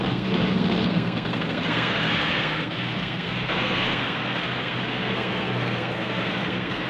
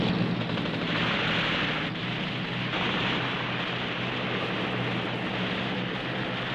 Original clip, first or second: second